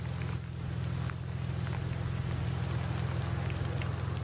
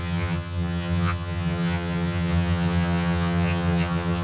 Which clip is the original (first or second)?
first